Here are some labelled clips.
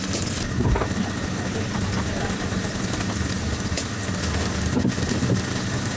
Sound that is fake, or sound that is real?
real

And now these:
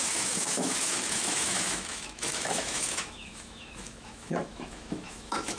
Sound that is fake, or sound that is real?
fake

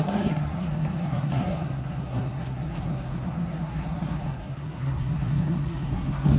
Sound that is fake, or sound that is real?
fake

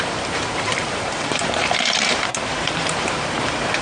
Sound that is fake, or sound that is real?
fake